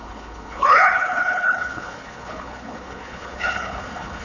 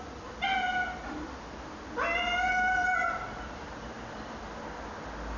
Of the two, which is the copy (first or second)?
first